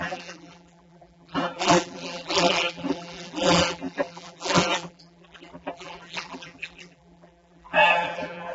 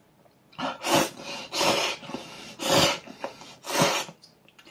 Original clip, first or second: second